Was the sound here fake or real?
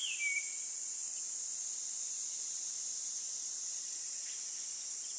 real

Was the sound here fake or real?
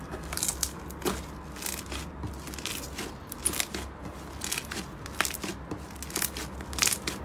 real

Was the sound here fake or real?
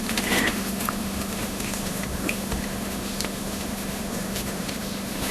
fake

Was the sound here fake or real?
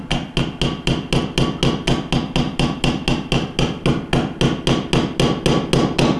real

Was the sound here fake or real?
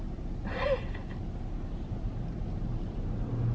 real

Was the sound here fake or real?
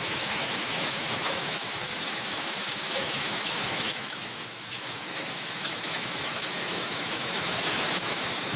fake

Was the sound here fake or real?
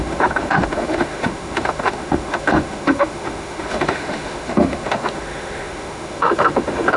fake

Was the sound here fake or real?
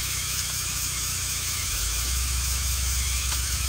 fake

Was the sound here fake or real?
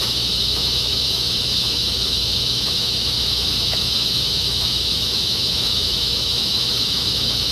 fake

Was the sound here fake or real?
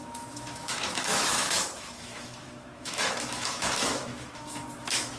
fake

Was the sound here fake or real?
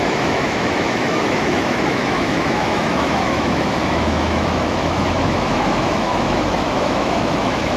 fake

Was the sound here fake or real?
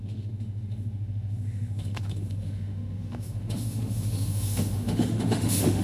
fake